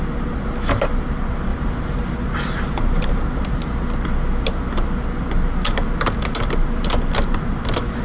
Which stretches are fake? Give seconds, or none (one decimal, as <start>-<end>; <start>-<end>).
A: 1.5-3.2